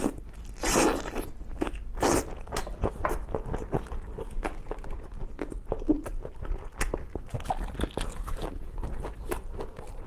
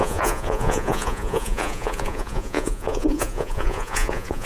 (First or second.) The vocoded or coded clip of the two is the second